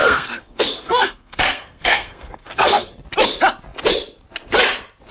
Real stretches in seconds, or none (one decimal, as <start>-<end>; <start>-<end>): 2.9-5.1